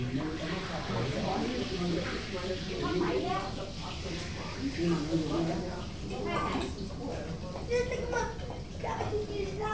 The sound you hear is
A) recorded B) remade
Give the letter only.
A